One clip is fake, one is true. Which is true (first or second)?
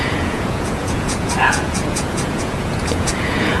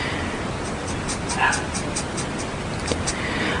second